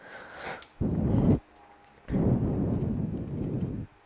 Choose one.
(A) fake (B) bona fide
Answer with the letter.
B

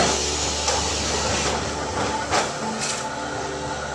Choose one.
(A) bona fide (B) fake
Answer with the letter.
A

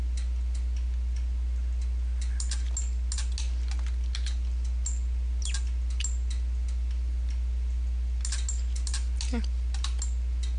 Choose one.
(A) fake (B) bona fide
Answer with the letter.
B